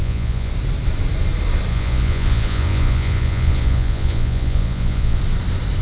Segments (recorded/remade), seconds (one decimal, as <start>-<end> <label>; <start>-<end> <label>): 0.0-0.5 remade; 0.5-1.7 recorded; 1.7-5.2 remade; 5.2-5.8 recorded